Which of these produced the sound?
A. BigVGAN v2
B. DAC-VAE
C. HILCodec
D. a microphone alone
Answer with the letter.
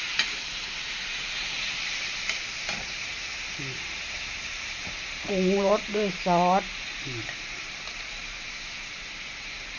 A